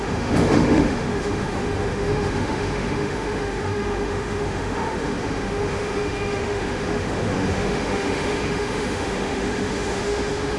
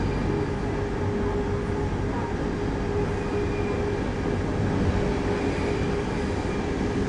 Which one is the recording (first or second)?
second